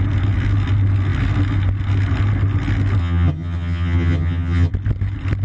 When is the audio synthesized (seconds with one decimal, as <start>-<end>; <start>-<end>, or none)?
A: 3.0-4.7